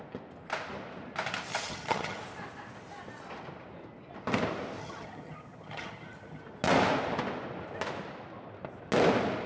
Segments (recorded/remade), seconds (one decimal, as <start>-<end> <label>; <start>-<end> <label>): 0.0-1.5 recorded; 1.5-2.2 remade; 2.2-4.8 recorded; 4.8-6.4 remade; 6.4-9.5 recorded